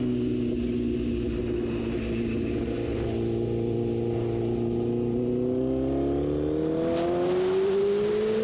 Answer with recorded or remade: recorded